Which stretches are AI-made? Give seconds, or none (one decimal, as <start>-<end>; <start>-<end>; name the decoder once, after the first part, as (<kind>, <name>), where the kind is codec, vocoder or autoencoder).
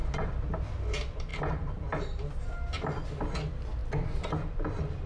none